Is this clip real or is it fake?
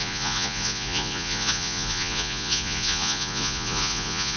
fake